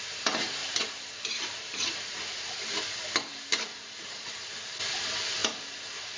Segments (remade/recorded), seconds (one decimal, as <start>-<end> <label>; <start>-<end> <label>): 0.0-0.6 recorded; 0.6-4.3 remade; 4.3-6.2 recorded